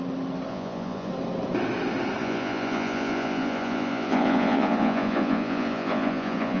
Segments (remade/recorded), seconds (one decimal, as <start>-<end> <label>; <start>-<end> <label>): 0.0-0.5 recorded; 0.5-1.1 remade; 1.1-2.2 recorded; 2.2-6.6 remade

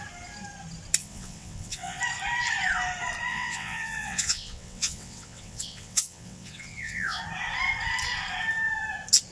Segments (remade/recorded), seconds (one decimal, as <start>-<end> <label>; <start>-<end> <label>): 0.0-1.0 recorded; 1.0-2.0 remade; 2.0-3.3 recorded; 3.3-7.2 remade; 7.2-9.3 recorded

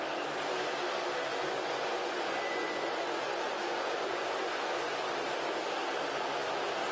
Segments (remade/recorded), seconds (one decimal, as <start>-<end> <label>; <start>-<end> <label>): 0.0-1.3 recorded; 1.3-5.1 remade; 5.1-6.9 recorded

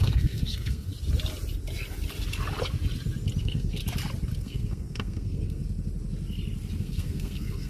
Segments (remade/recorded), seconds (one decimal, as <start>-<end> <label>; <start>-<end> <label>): 0.0-0.9 remade; 0.9-3.4 recorded; 3.4-3.8 remade; 3.8-4.4 recorded; 4.4-5.6 remade; 5.6-6.8 recorded; 6.8-7.7 remade

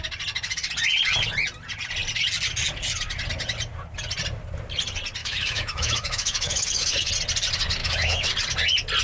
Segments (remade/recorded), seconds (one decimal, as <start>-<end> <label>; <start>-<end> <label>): 0.0-5.2 recorded; 5.2-7.1 remade; 7.1-7.8 recorded; 7.8-8.3 remade; 8.3-9.0 recorded

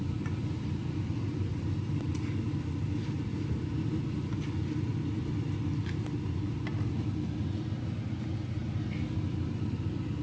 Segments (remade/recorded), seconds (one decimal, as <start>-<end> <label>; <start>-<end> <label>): 0.0-10.2 recorded

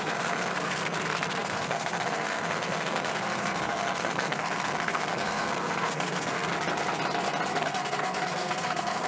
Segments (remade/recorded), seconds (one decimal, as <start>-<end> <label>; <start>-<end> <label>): 0.0-6.5 remade; 6.5-7.6 recorded; 7.6-9.1 remade